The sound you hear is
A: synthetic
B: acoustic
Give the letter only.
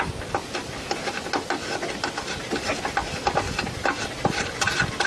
B